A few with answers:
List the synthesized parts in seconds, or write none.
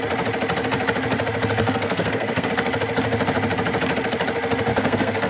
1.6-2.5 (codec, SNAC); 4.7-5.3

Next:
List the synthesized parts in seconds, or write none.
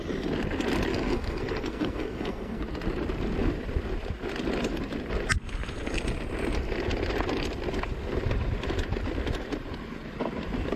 0.9-2.6 (codec, SNAC)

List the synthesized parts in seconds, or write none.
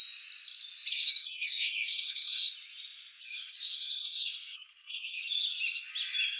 0.9-2.5 (codec, SNAC); 3.2-5.2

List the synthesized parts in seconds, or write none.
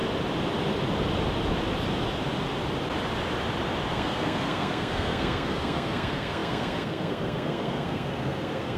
3.9-8.8 (codec, SNAC)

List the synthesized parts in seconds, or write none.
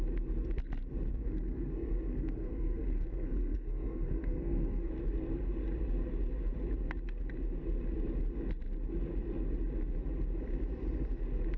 1.1-4.9 (codec, SNAC)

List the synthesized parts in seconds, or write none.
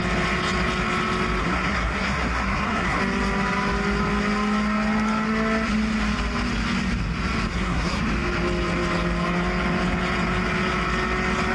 1.4-3.0 (codec, SNAC); 7.5-8.0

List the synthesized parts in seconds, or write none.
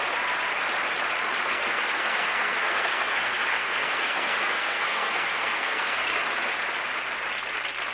1.5-6.2 (codec, SNAC)